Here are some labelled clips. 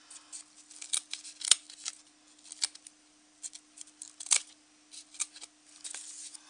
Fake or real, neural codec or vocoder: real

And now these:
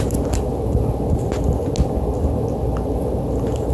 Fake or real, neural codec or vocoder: real